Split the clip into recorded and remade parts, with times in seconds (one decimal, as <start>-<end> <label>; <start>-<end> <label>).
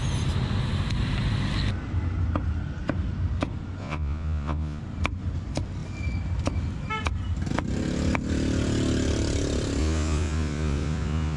0.0-3.8 recorded; 3.8-4.8 remade; 4.8-9.8 recorded; 9.8-11.4 remade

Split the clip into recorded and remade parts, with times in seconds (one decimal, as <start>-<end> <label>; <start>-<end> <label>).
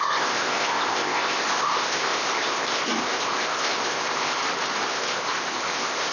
0.0-4.4 remade; 4.4-4.9 recorded; 4.9-6.1 remade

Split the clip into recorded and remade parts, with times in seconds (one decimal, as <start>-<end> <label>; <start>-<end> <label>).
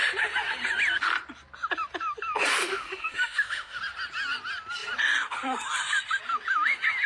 0.0-2.6 recorded; 2.6-3.8 remade; 3.8-7.1 recorded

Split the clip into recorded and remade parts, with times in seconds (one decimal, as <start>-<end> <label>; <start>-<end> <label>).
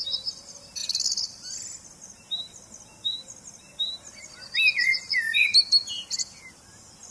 0.0-7.1 recorded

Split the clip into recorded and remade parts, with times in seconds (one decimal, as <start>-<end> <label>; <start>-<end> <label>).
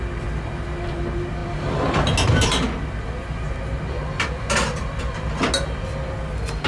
0.0-6.7 recorded